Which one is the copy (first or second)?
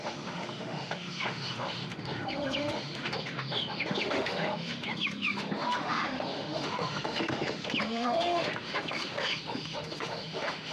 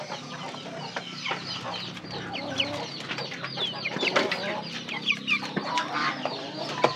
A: first